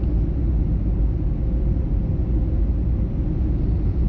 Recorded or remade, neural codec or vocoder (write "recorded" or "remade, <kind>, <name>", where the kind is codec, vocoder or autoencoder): recorded